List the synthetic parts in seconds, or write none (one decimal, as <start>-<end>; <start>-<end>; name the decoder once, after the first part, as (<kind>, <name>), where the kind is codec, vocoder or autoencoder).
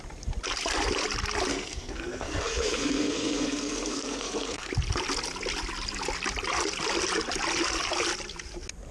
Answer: 1.5-4.7 (codec, SNAC)